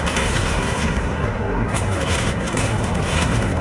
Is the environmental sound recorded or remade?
remade